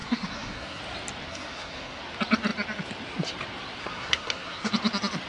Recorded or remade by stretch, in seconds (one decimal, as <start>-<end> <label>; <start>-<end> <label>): 0.0-0.8 remade; 0.8-1.3 recorded; 1.3-2.0 remade; 2.0-3.8 recorded; 3.8-4.7 remade; 4.7-5.3 recorded